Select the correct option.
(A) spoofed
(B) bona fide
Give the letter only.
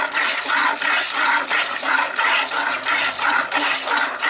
B